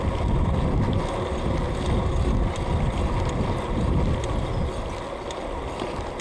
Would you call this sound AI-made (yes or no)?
no